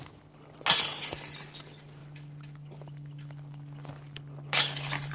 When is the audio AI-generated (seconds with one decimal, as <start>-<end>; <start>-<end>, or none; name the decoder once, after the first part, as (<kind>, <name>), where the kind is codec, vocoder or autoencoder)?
none